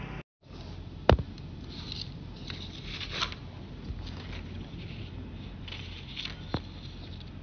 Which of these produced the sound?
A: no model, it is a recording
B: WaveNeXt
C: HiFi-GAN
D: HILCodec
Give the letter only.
A